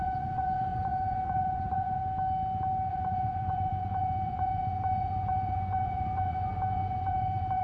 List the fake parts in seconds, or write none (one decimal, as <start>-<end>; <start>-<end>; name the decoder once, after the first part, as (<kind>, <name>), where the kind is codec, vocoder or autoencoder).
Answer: 0.0-2.0 (vocoder, Vocos); 2.9-7.6